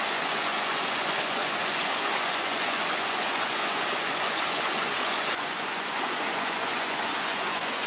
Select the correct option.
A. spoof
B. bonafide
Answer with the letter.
A